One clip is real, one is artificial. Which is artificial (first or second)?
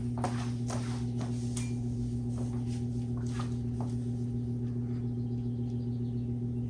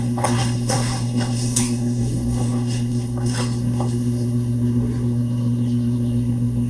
second